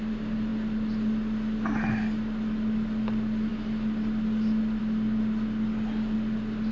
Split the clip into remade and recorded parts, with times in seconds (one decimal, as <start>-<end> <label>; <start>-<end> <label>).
0.0-6.7 recorded